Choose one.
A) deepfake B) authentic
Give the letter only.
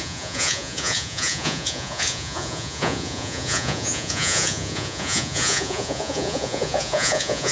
A